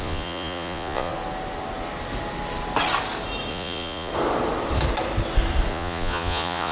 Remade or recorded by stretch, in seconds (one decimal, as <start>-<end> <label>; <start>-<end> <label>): 0.0-1.1 remade; 1.1-3.5 recorded; 3.5-4.1 remade; 4.1-5.7 recorded; 5.7-6.7 remade